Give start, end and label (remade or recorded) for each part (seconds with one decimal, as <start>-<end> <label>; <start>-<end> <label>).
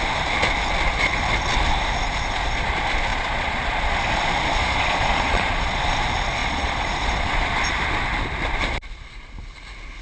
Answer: 0.0-3.1 recorded; 3.1-4.0 remade; 4.0-4.6 recorded; 4.6-5.8 remade; 5.8-6.4 recorded; 6.4-7.5 remade; 7.5-10.0 recorded